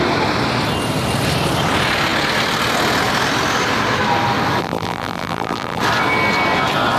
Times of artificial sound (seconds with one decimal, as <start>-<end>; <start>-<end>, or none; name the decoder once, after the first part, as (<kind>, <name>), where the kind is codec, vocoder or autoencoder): 4.6-5.8 (vocoder, BigVGAN v2)